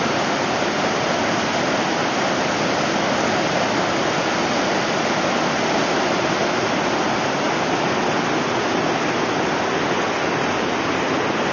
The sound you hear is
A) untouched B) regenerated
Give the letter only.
A